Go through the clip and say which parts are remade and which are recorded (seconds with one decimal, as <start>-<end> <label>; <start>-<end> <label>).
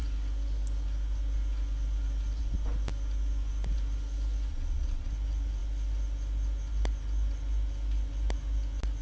0.0-4.5 recorded; 4.5-5.1 remade; 5.1-9.0 recorded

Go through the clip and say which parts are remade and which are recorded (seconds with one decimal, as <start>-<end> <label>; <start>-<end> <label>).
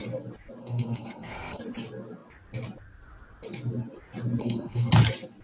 0.0-0.6 recorded; 0.6-1.6 remade; 1.6-4.4 recorded; 4.4-4.9 remade; 4.9-5.4 recorded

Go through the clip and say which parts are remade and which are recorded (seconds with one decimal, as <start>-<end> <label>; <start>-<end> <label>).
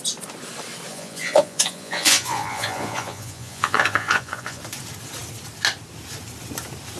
0.0-0.9 recorded; 0.9-4.6 remade; 4.6-7.0 recorded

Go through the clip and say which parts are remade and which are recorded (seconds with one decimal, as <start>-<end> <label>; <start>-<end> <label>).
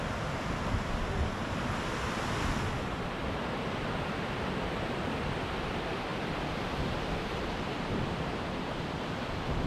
0.0-9.7 remade